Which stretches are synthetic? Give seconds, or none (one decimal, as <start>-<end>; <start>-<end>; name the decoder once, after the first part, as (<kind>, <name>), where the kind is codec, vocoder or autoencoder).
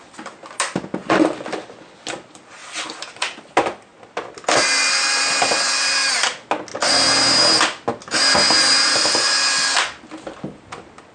2.6-3.4 (vocoder, BigVGAN v2)